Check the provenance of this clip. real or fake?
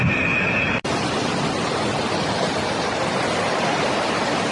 real